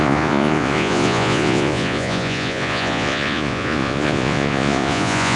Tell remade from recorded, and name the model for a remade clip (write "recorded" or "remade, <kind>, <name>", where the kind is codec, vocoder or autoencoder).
remade, vocoder, Vocos